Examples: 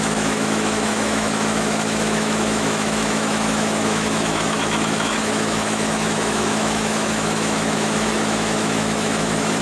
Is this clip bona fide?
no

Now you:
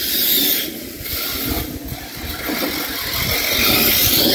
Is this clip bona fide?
yes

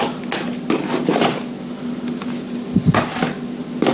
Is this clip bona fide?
yes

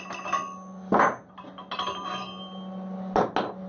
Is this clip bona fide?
yes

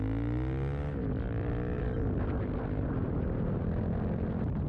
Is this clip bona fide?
yes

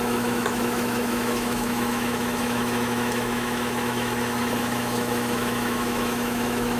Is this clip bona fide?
no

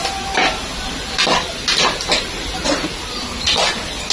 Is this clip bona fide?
yes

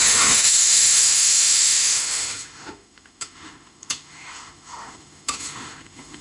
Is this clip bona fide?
no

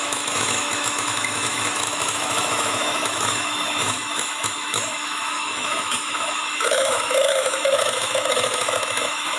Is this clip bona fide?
no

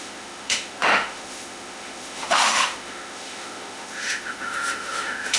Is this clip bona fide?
no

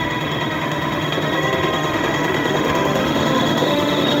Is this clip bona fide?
no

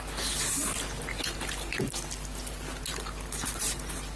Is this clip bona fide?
yes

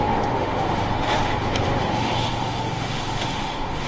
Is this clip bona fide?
no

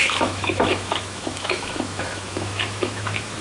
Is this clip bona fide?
no